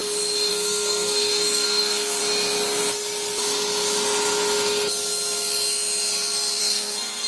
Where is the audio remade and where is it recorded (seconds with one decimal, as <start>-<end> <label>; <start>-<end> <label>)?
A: 0.0-0.5 recorded; 0.5-2.2 remade; 2.2-6.6 recorded; 6.6-7.3 remade